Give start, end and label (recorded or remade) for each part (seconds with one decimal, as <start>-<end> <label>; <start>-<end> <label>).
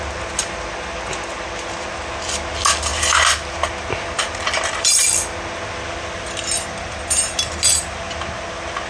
0.0-8.9 recorded